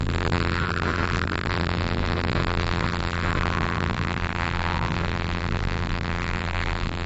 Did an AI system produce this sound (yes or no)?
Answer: yes